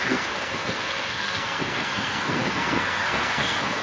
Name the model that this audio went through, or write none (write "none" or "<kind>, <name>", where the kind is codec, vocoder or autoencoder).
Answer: codec, SNAC